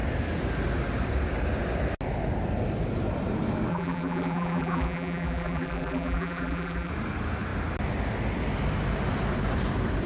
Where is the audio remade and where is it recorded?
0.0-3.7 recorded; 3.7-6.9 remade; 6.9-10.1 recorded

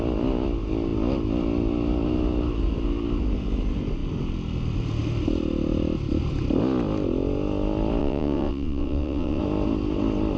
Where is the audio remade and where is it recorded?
0.0-8.0 recorded; 8.0-9.4 remade; 9.4-10.4 recorded